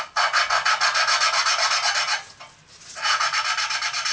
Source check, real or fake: real